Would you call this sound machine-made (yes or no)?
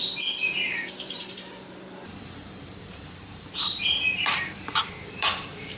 yes